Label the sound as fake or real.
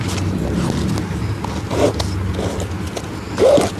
real